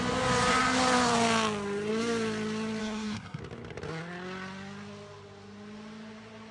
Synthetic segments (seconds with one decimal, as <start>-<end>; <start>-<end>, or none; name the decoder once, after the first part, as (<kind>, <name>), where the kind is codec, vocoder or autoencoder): 2.8-3.4 (codec, SNAC)